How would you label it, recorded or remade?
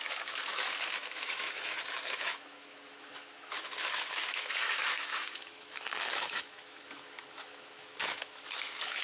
remade